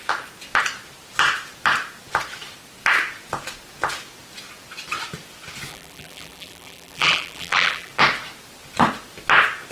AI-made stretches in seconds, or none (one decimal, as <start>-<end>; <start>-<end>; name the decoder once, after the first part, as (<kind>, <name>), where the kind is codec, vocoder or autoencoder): 5.7-7.9 (vocoder, BigVGAN v2)